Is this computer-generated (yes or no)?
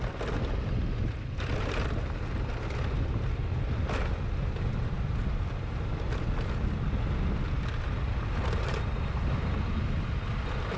no